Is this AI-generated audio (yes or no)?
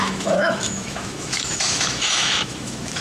yes